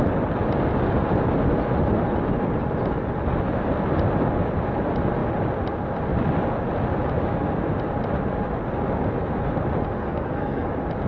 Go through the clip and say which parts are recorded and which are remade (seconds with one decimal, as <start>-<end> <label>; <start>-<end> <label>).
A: 0.0-10.0 recorded; 10.0-10.7 remade; 10.7-11.1 recorded